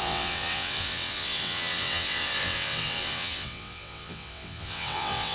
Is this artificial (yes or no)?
yes